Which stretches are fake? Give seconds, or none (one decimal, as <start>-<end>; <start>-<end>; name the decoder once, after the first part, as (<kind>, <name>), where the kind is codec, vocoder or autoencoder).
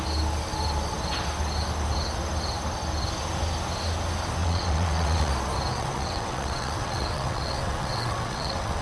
4.4-5.3 (vocoder, WaveNeXt); 5.7-8.8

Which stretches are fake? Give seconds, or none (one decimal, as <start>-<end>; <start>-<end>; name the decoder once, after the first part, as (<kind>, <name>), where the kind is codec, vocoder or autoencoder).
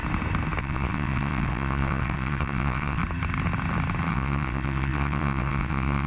0.6-3.0 (vocoder, WaveNeXt); 4.1-6.1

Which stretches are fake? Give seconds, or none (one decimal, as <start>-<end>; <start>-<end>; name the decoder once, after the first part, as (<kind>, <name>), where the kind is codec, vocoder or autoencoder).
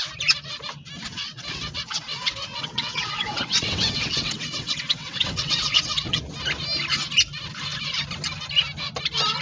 1.1-6.2 (vocoder, WaveNeXt)